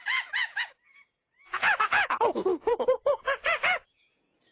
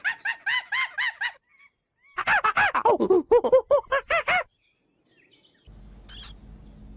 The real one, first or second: second